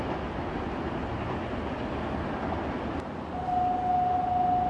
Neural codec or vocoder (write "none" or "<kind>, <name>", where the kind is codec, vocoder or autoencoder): none